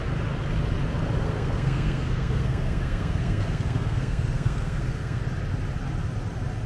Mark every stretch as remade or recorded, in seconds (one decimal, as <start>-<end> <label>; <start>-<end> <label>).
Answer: 0.0-1.2 recorded; 1.2-5.2 remade; 5.2-6.7 recorded